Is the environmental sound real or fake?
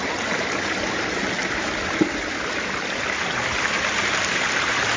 real